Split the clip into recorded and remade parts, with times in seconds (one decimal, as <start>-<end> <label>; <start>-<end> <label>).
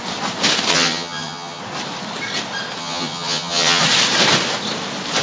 0.0-0.7 recorded; 0.7-1.6 remade; 1.6-2.8 recorded; 2.8-3.8 remade; 3.8-5.2 recorded